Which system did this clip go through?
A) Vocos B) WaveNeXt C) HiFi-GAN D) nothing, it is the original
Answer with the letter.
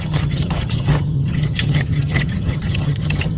C